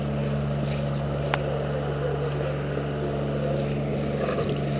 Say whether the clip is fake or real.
real